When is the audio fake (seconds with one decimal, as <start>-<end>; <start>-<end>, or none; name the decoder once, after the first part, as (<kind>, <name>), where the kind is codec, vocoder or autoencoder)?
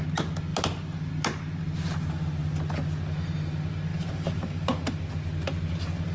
3.9-5.1 (vocoder, BigVGAN v2)